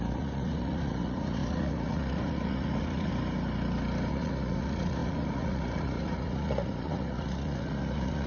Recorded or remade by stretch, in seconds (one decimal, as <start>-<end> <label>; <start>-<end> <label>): 0.0-3.1 remade; 3.1-4.1 recorded; 4.1-8.3 remade